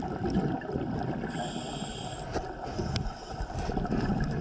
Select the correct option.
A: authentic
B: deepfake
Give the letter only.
A